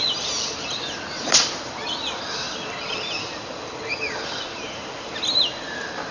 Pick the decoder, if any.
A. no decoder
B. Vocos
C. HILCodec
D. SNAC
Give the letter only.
A